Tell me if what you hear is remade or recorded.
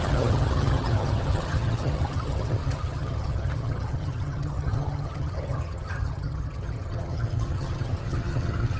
remade